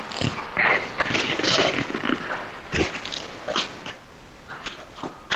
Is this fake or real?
real